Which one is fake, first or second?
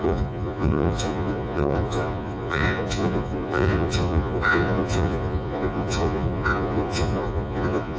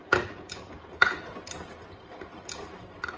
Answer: first